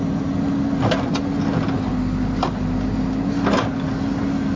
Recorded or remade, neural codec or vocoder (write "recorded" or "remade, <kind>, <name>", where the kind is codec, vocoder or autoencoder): recorded